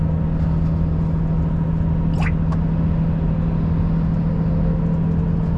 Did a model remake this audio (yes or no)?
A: no